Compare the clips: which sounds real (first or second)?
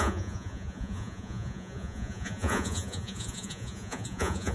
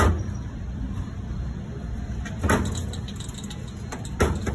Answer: second